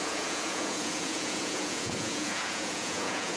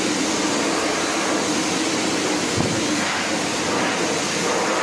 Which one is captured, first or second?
second